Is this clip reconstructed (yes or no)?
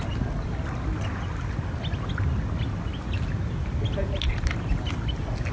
no